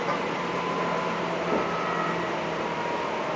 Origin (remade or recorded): remade